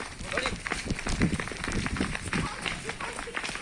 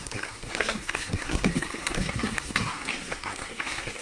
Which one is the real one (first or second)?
first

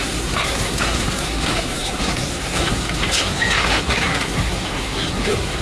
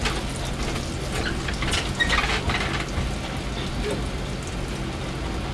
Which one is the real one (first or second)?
second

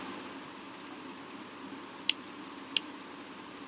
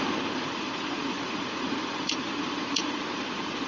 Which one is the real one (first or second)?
first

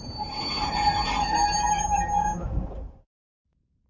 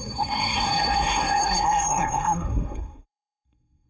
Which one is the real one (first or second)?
first